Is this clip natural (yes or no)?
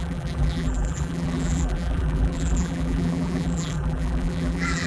no